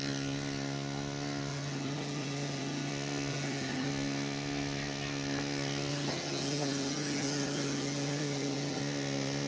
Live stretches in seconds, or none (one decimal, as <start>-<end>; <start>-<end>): 0.0-1.5; 2.9-3.3; 3.9-5.9; 8.8-9.5